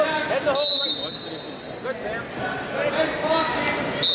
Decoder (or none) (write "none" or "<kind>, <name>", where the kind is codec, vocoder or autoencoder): none